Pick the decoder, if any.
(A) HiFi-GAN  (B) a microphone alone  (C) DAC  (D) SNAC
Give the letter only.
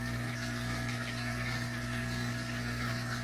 D